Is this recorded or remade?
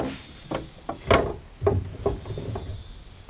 recorded